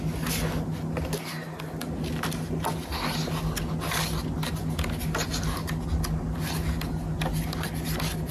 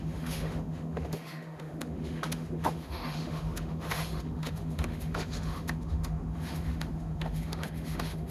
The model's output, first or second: second